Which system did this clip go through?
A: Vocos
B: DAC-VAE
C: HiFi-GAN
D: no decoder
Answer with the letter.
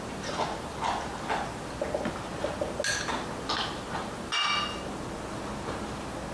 D